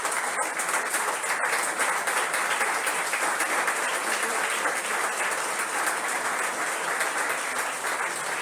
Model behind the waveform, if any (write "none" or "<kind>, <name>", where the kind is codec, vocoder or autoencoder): none